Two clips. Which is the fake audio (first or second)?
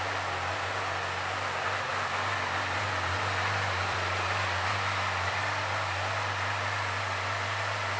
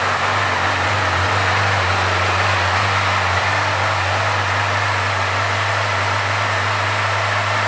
first